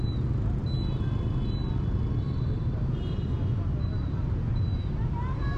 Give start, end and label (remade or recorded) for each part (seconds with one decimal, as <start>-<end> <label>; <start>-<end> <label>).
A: 0.0-5.6 recorded